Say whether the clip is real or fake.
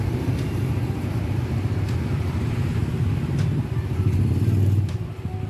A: real